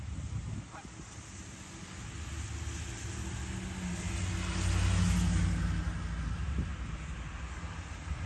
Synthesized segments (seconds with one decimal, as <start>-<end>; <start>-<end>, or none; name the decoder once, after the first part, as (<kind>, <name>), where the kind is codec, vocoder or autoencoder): none